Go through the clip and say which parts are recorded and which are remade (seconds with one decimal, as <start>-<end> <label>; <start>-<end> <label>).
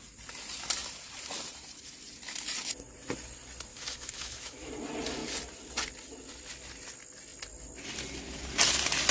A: 0.0-3.7 recorded; 3.7-4.7 remade; 4.7-9.1 recorded